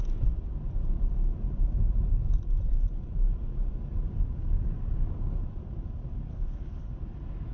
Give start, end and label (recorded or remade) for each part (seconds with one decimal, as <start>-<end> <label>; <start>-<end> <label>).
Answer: 0.0-6.3 recorded; 6.3-6.9 remade; 6.9-7.5 recorded